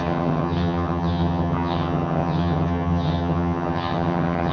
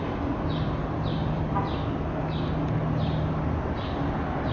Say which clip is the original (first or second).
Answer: second